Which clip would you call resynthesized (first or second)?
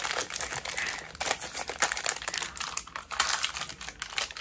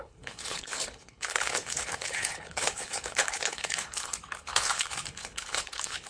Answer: second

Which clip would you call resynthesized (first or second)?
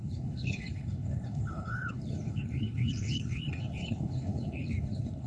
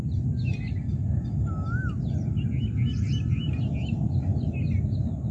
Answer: first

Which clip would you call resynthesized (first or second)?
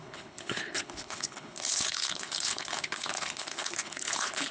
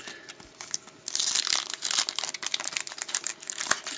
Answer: first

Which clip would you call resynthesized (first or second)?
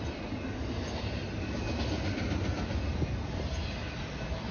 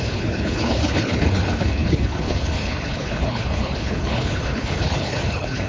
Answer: second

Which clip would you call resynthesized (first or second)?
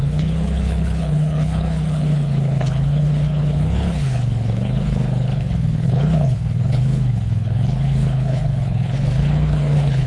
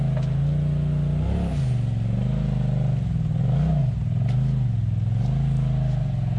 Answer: first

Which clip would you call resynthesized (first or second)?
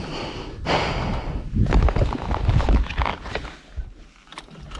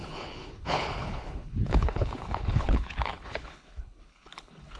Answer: second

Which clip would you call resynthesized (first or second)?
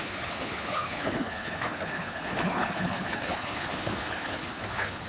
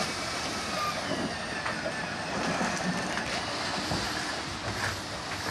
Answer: first